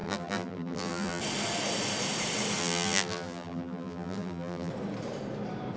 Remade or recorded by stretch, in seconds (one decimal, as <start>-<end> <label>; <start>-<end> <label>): 0.0-1.2 remade; 1.2-2.6 recorded; 2.6-4.7 remade; 4.7-5.8 recorded